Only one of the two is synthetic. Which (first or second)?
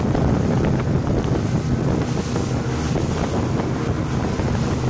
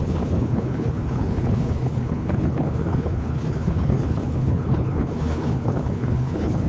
second